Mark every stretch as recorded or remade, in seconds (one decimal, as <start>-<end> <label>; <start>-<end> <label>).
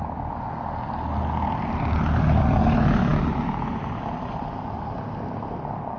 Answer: 0.0-6.0 recorded